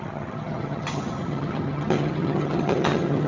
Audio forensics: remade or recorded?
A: remade